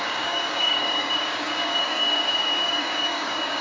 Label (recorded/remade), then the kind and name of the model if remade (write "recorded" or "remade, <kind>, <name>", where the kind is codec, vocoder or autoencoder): remade, codec, DAC